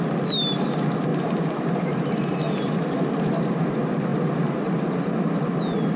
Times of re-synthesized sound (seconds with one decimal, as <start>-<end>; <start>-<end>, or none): 1.1-3.1